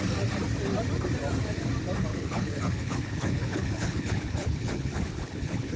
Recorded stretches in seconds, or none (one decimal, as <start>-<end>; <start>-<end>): 0.0-2.1